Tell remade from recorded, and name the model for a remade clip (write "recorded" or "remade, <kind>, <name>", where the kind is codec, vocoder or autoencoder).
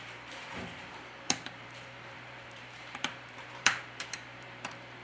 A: remade, vocoder, BigVGAN v2